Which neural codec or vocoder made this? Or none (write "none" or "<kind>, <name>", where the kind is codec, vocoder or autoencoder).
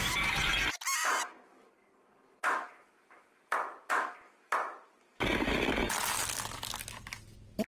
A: none